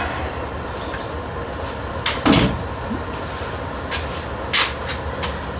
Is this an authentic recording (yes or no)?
yes